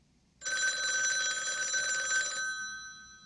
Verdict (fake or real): real